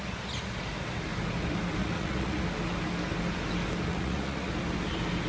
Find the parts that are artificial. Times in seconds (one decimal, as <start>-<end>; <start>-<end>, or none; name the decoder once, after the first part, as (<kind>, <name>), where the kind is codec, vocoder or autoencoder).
1.8-2.4 (vocoder, Vocos); 3.9-4.5